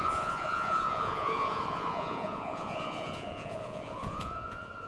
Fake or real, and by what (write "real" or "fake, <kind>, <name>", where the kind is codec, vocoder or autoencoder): fake, vocoder, Vocos